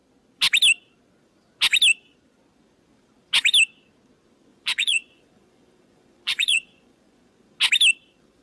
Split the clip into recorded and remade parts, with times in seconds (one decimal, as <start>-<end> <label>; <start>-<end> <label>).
0.0-4.5 recorded; 4.5-7.5 remade; 7.5-8.4 recorded